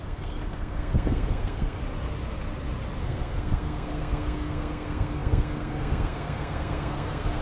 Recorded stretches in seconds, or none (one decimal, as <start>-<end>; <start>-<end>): 1.8-3.0